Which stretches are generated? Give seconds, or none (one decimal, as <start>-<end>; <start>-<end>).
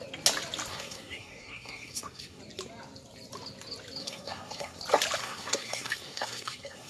0.7-2.4; 4.0-4.8; 5.2-6.9